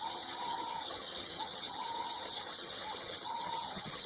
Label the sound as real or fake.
fake